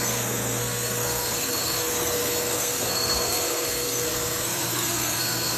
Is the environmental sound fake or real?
fake